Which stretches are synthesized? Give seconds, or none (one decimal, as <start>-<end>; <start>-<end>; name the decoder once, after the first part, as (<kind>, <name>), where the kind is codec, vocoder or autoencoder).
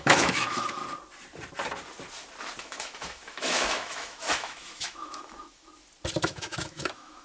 0.0-0.8 (autoencoder, DAC-VAE); 2.6-5.7; 6.2-7.2